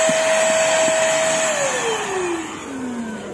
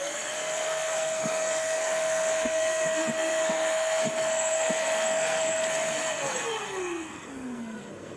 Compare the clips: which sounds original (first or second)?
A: first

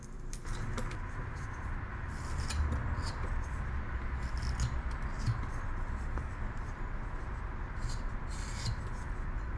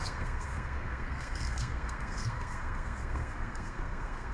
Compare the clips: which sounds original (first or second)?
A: first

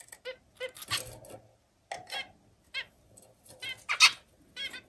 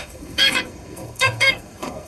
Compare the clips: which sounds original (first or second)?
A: first